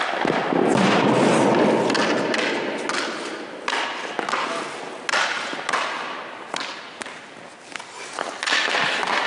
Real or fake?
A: real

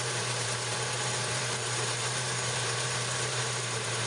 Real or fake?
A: fake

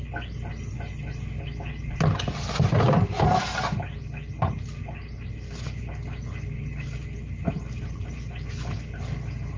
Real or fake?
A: real